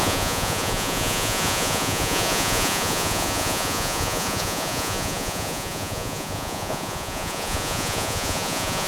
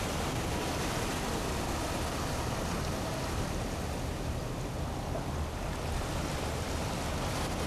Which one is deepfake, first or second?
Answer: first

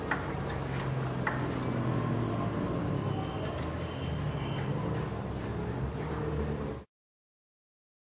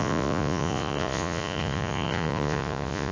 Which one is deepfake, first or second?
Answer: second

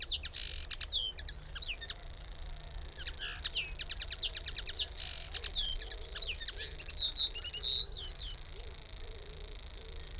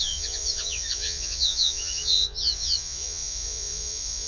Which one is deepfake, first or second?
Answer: second